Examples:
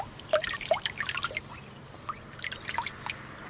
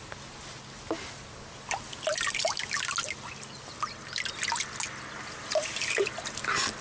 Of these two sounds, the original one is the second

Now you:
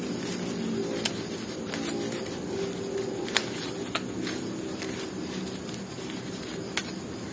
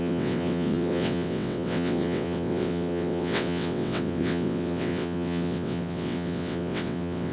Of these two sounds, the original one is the first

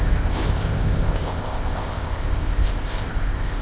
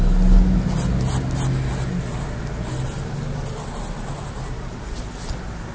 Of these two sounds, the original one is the second